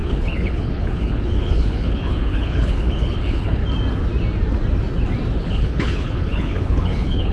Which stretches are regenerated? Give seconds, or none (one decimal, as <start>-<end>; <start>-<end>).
0.0-3.6; 5.4-7.3

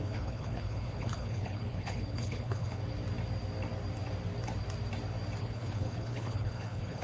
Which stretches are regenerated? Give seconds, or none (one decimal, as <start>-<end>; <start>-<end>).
0.0-2.8; 5.4-7.0